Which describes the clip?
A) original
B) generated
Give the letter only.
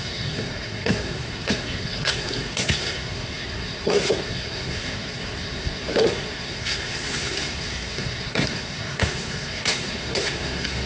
B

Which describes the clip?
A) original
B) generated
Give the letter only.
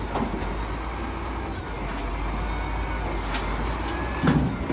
A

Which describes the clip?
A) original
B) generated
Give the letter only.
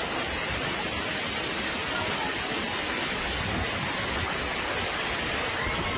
A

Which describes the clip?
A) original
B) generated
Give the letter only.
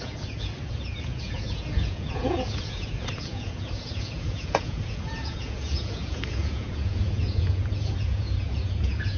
B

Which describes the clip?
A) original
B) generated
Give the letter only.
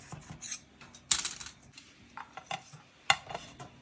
A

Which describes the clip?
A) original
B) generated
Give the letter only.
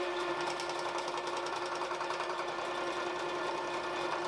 A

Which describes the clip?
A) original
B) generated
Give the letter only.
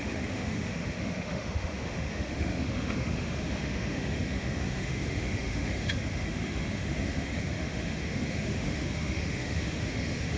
B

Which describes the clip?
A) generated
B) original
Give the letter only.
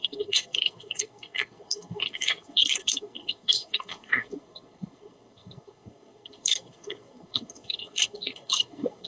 A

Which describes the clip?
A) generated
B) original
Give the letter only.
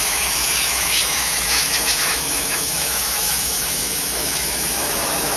A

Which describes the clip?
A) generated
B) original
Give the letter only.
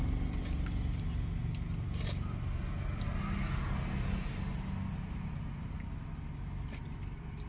B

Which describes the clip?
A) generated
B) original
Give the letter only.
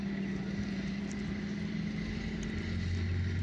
B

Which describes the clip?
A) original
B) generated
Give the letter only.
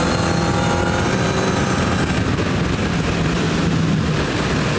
A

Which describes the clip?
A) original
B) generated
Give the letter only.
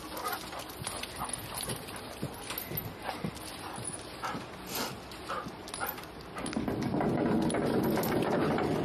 A